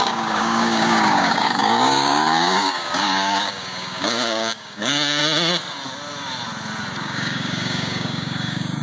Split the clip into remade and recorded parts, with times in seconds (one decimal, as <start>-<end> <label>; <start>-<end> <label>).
0.0-5.2 remade; 5.2-7.0 recorded; 7.0-8.8 remade